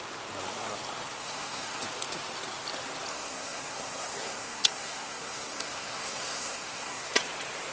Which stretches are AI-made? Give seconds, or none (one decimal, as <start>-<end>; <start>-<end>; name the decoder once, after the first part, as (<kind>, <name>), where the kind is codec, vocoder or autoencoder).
1.2-1.8 (codec, SNAC); 3.1-7.1